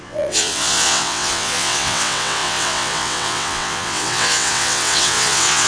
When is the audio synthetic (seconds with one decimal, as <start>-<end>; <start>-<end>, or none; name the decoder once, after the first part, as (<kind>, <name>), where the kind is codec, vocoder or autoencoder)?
0.0-5.7 (vocoder, WaveNeXt)